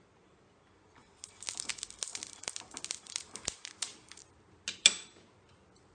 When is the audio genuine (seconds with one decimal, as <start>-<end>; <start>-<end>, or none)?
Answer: 0.0-5.9